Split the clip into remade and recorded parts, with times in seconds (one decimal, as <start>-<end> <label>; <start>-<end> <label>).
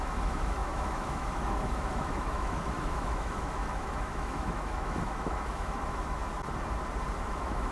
0.0-6.2 remade; 6.2-7.2 recorded; 7.2-7.7 remade